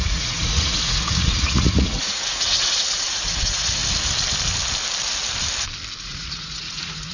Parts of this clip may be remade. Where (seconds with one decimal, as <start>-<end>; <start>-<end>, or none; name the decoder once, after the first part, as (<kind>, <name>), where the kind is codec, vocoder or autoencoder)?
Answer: 0.0-3.8 (vocoder, Vocos); 6.0-7.1